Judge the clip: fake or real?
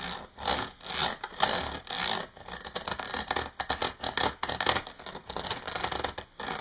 real